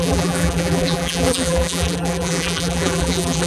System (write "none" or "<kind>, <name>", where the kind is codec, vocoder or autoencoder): vocoder, BigVGAN v2